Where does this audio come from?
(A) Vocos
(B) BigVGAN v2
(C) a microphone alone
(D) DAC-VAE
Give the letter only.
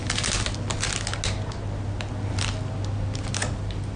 C